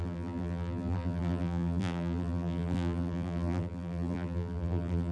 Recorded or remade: remade